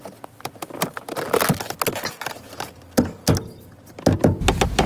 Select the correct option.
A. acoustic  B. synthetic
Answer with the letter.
A